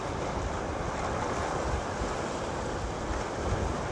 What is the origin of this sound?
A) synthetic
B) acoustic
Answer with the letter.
B